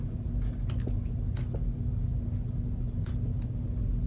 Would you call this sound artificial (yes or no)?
no